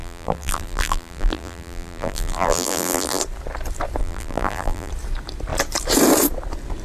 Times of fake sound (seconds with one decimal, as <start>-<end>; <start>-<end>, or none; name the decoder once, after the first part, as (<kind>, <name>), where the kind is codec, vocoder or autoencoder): 0.0-3.2 (vocoder, BigVGAN v2); 4.0-4.9